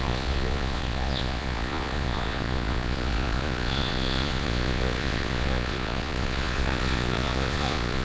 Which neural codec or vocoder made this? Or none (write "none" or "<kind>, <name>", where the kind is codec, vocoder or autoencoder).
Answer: vocoder, Vocos